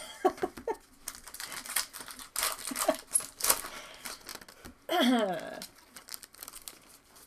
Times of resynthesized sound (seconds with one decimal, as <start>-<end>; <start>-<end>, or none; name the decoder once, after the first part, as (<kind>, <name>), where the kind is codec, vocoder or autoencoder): none